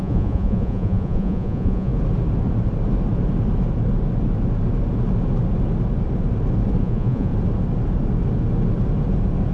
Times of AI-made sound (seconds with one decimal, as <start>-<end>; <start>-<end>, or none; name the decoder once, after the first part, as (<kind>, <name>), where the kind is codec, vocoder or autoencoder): 0.0-1.9 (vocoder, Vocos); 6.8-7.3